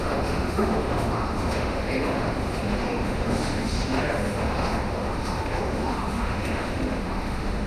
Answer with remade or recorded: remade